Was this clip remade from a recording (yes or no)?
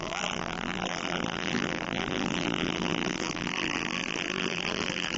yes